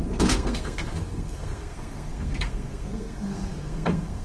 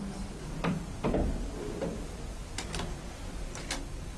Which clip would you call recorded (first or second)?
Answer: second